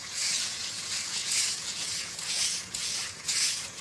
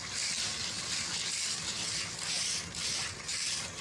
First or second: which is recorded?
second